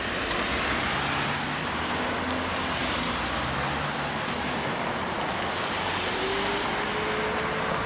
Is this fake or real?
real